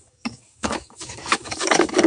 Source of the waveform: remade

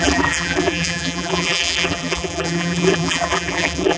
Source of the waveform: remade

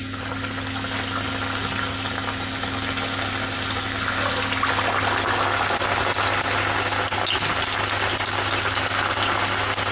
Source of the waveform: recorded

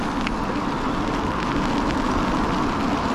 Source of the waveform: recorded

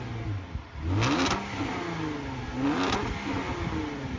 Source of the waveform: recorded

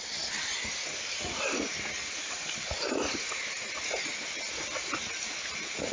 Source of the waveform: recorded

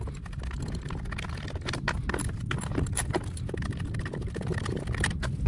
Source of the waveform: recorded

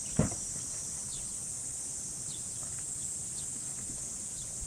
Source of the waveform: remade